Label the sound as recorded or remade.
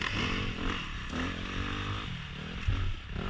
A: recorded